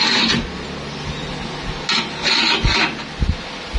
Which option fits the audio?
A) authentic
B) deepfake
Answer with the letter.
A